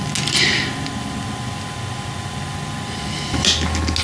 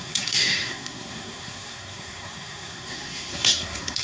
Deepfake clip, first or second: second